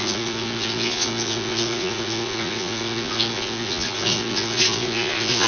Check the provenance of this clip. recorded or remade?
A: remade